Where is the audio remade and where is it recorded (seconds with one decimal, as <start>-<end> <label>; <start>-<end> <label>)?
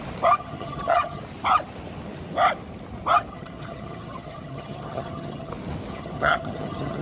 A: 0.0-0.4 recorded; 0.4-1.2 remade; 1.2-3.3 recorded; 3.3-5.5 remade; 5.5-5.9 recorded; 5.9-7.0 remade